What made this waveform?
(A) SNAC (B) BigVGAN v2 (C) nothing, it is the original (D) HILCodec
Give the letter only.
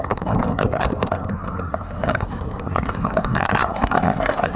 A